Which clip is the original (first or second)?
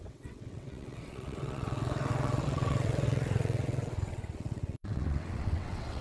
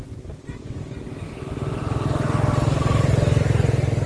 second